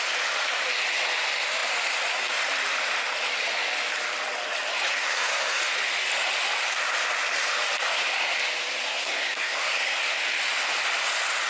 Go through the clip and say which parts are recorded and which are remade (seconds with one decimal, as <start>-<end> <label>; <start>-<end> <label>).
0.0-4.9 recorded; 4.9-5.6 remade; 5.6-8.9 recorded; 8.9-10.2 remade; 10.2-11.5 recorded